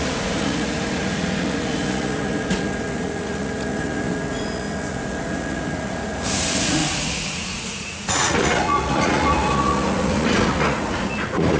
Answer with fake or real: fake